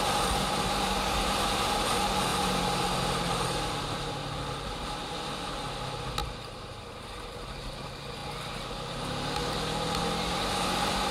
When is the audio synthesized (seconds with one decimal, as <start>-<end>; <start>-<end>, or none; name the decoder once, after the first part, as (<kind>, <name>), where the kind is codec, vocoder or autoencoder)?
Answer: 6.2-6.9 (vocoder, BigVGAN v2)